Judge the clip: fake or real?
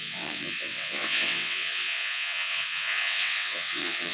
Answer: fake